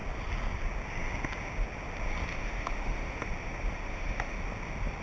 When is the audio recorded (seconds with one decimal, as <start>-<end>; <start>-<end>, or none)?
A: 0.0-2.3; 3.3-3.9; 4.4-5.0